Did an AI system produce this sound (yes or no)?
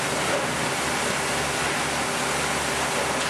no